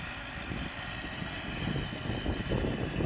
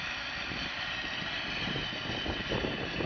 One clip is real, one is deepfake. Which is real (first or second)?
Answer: first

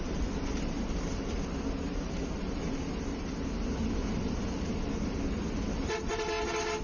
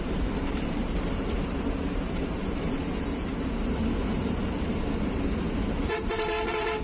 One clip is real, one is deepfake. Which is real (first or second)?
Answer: first